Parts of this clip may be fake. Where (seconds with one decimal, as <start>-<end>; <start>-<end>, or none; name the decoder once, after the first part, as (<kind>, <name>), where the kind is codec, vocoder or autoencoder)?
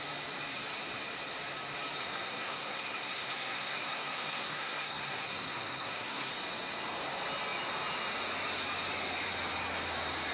2.0-6.3 (codec, SNAC)